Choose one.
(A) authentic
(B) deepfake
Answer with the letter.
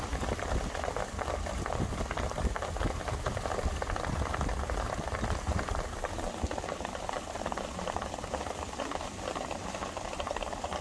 A